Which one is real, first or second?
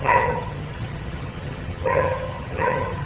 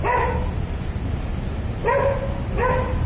second